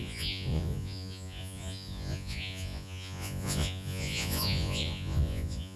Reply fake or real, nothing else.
fake